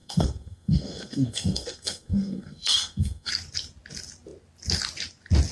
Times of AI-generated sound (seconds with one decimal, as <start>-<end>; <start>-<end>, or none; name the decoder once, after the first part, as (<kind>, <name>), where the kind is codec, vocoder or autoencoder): 0.0-3.3 (codec, SNAC)